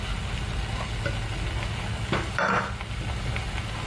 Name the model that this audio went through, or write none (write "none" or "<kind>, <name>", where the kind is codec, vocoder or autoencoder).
none